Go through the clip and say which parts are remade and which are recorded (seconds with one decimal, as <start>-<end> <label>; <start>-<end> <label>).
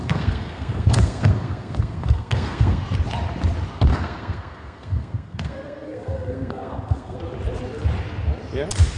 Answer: 0.0-2.8 remade; 2.8-3.9 recorded; 3.9-7.2 remade; 7.2-9.0 recorded